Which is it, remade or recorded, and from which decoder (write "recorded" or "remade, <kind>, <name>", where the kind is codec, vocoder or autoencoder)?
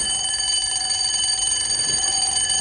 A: remade, vocoder, Vocos